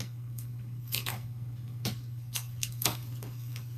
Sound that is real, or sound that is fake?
fake